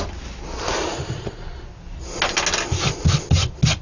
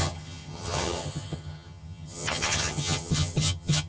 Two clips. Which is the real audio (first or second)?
first